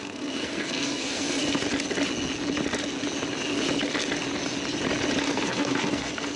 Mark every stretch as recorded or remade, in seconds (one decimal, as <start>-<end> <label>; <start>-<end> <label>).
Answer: 0.0-1.4 remade; 1.4-5.2 recorded; 5.2-6.4 remade